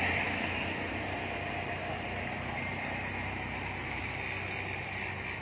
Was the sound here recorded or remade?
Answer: recorded